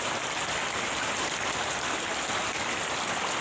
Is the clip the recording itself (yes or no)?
yes